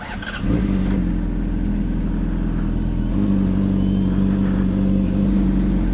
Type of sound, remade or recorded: recorded